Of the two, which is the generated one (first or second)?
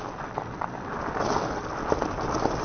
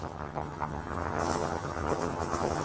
second